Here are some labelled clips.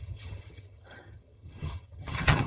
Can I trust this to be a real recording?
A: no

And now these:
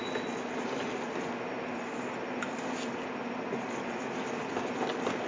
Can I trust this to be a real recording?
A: yes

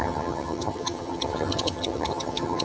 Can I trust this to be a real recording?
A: no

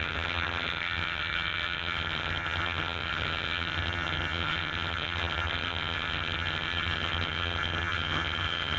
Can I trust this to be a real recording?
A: no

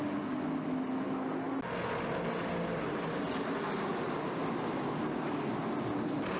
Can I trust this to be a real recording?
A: yes